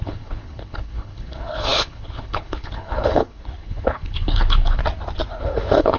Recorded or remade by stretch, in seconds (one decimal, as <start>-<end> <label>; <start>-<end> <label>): 0.0-4.8 remade; 4.8-5.4 recorded; 5.4-6.0 remade

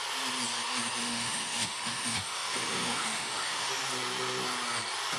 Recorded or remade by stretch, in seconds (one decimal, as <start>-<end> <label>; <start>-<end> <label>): 0.0-1.0 recorded; 1.0-3.7 remade; 3.7-5.2 recorded

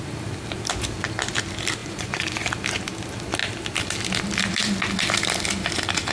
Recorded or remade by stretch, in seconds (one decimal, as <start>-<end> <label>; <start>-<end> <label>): 0.0-1.8 recorded; 1.8-2.5 remade; 2.5-6.1 recorded

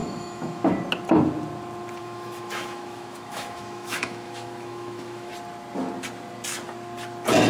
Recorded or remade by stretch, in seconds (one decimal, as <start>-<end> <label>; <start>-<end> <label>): 0.0-0.7 remade; 0.7-2.0 recorded; 2.0-5.3 remade; 5.3-7.5 recorded

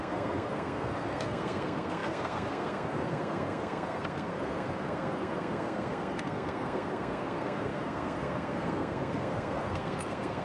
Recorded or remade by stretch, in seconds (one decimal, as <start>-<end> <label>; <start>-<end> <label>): 0.0-10.4 remade

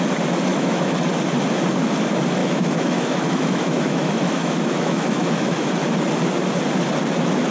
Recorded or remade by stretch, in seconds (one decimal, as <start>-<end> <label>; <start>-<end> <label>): 0.0-0.5 recorded; 0.5-1.0 remade; 1.0-2.4 recorded; 2.4-5.7 remade; 5.7-7.5 recorded

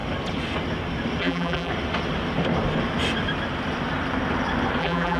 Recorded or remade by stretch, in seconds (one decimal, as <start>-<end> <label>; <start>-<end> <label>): 0.0-1.2 recorded; 1.2-1.7 remade; 1.7-4.8 recorded; 4.8-5.2 remade